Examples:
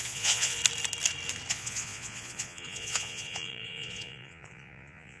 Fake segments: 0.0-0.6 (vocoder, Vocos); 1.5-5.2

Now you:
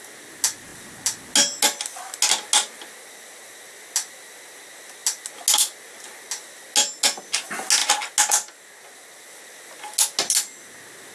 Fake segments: none

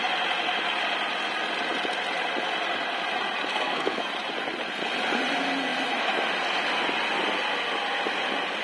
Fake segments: 3.5-4.1 (codec, SNAC)

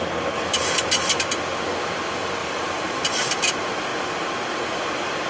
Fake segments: 2.4-3.0 (vocoder, BigVGAN v2)

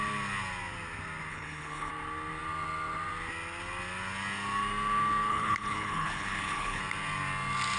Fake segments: 1.3-1.9 (codec, HILCodec); 5.3-6.8

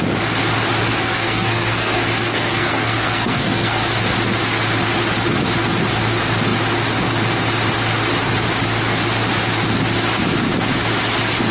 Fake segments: 1.0-3.9 (codec, SNAC)